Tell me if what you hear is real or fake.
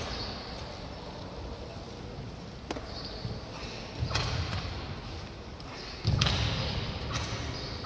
real